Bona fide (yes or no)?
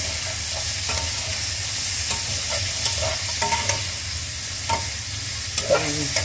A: yes